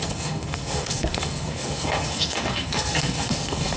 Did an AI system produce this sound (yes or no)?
yes